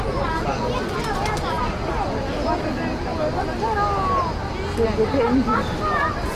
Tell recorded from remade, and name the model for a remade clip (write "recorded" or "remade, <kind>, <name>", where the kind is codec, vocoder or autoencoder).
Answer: recorded